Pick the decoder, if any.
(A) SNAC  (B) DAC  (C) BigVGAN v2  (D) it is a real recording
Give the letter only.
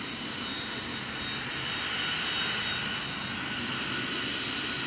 D